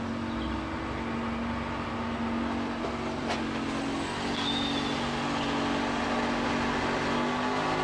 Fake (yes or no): no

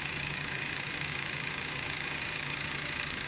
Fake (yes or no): yes